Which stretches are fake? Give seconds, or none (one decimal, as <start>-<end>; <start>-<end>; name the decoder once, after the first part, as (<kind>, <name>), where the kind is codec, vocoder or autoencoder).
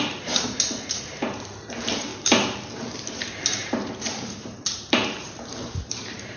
0.0-2.1 (vocoder, BigVGAN v2); 3.3-6.4